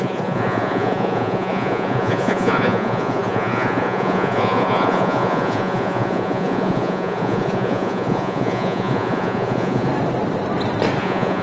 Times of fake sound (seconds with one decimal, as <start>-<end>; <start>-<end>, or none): 0.0-9.9; 11.0-11.4